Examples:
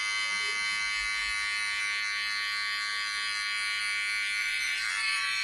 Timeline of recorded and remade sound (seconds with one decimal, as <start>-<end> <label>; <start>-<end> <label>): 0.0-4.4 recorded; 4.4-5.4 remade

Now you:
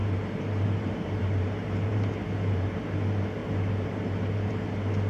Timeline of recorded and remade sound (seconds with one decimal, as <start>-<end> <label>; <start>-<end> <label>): 0.0-2.9 remade; 2.9-3.4 recorded; 3.4-4.5 remade; 4.5-5.1 recorded

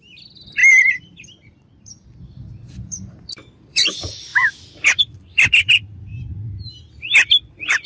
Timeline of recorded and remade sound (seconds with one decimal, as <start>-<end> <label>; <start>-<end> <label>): 0.0-4.3 remade; 4.3-5.0 recorded; 5.0-6.1 remade; 6.1-7.5 recorded; 7.5-7.9 remade

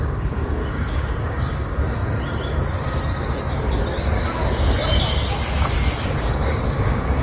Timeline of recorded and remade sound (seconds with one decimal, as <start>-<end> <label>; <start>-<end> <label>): 0.0-2.0 remade; 2.0-6.2 recorded; 6.2-7.2 remade

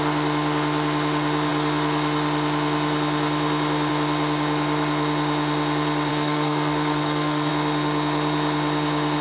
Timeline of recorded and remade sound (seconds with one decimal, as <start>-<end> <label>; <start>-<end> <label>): 0.0-6.1 recorded; 6.1-7.5 remade; 7.5-9.2 recorded

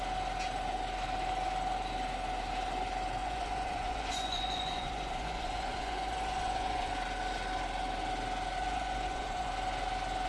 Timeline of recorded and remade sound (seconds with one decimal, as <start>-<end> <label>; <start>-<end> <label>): 0.0-3.2 recorded; 3.2-6.9 remade; 6.9-8.6 recorded; 8.6-9.5 remade; 9.5-10.3 recorded